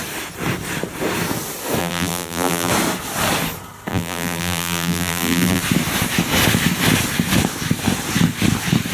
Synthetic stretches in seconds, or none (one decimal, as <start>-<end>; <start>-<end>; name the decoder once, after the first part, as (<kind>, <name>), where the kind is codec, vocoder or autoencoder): 1.8-2.7 (vocoder, BigVGAN v2); 3.9-5.6